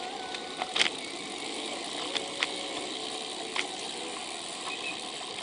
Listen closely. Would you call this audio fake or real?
real